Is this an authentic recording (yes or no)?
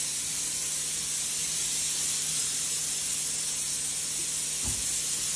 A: yes